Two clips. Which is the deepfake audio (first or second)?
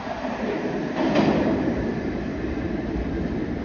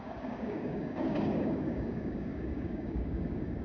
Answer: second